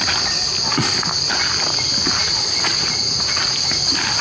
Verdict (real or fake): real